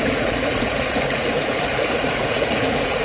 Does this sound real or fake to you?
fake